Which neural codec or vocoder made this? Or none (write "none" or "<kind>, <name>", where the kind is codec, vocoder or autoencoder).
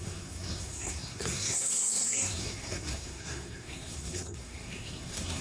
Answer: codec, SNAC